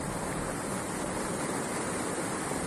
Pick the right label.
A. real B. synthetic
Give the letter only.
A